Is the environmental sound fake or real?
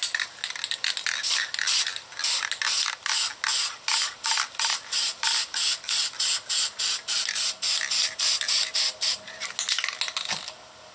real